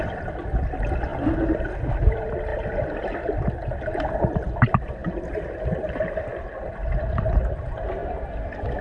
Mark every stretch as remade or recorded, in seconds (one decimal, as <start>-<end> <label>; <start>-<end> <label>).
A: 0.0-1.1 remade; 1.1-1.9 recorded; 1.9-8.8 remade